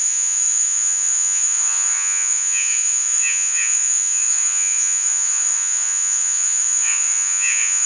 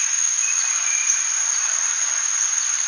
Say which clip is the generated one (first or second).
first